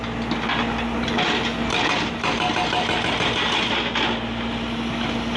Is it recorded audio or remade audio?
recorded